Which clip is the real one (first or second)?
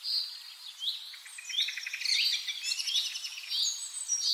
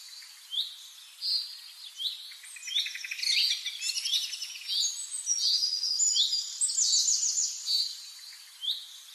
second